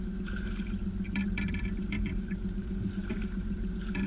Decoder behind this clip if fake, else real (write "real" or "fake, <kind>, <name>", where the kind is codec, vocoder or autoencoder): fake, vocoder, BigVGAN v2